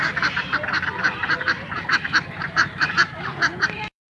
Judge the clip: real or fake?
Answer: fake